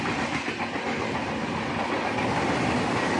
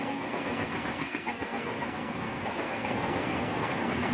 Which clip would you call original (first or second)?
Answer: first